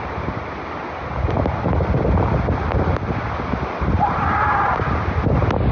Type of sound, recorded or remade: recorded